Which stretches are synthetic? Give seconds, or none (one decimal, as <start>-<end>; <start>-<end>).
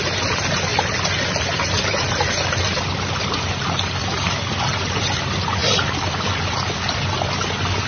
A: 0.7-3.2; 5.6-6.4